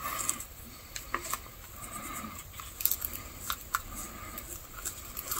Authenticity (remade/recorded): recorded